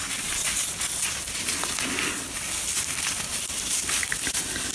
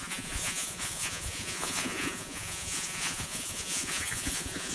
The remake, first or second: second